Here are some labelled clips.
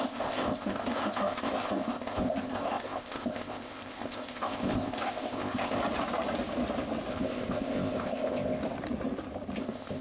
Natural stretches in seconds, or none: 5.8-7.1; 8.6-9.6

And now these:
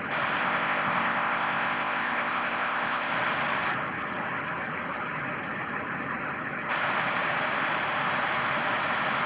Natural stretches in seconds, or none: 0.0-0.4; 3.1-9.3

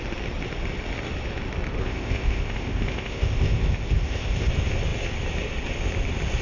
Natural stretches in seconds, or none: 0.0-1.8; 4.5-6.4

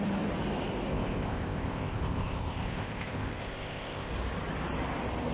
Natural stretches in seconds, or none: 0.0-0.9; 4.1-5.3

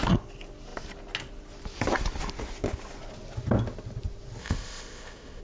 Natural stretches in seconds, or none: 0.0-4.4

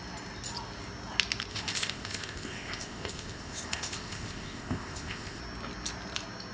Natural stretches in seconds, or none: 0.0-1.5; 5.4-6.5

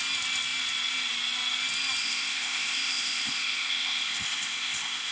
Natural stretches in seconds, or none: 0.0-2.0

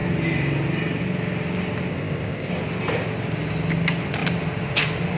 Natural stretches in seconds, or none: 0.0-1.9; 2.5-5.2